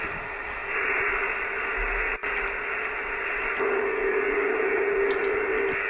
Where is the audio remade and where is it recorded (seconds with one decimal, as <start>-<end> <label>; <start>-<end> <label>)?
0.0-5.9 recorded